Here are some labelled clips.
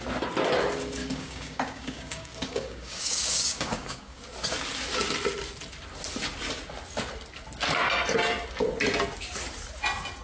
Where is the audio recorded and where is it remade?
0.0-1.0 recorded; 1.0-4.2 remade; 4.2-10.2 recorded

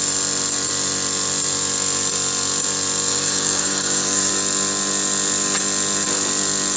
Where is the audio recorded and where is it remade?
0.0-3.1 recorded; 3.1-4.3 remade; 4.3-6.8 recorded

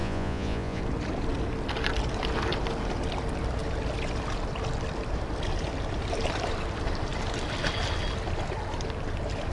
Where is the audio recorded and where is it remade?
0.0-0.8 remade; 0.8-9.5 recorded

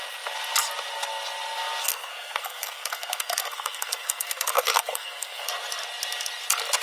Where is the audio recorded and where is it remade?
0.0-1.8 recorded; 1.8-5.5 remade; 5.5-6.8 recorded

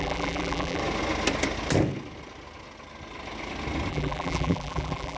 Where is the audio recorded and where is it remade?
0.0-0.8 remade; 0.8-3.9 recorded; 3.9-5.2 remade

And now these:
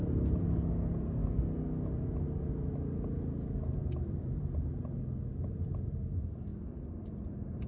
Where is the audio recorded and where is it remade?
0.0-3.8 recorded; 3.8-4.4 remade; 4.4-6.5 recorded; 6.5-7.1 remade; 7.1-7.7 recorded